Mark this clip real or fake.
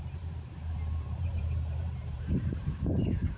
fake